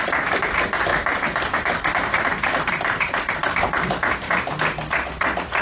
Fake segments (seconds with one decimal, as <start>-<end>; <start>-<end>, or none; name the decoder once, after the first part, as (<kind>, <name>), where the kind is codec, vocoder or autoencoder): 0.9-4.3 (vocoder, BigVGAN v2)